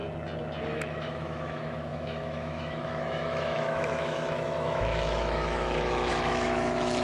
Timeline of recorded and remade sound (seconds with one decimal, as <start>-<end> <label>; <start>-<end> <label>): 0.0-0.6 recorded; 0.6-7.0 remade